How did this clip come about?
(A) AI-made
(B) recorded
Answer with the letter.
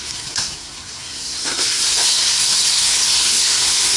A